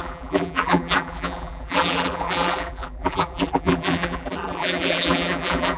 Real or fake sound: fake